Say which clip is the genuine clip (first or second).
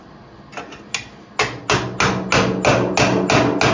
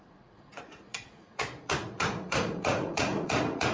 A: first